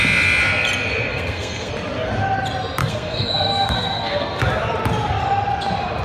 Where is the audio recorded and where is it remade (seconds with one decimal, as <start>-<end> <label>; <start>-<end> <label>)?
0.0-1.1 recorded; 1.1-1.7 remade; 1.7-2.8 recorded; 2.8-4.4 remade; 4.4-6.0 recorded